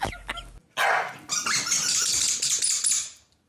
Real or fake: real